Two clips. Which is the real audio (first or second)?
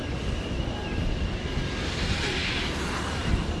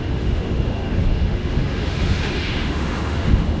first